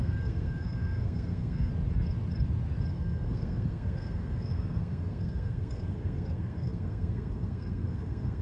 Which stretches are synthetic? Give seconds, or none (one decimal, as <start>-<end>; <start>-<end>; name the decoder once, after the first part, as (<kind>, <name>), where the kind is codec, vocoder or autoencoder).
0.0-1.7 (codec, SNAC); 2.9-8.4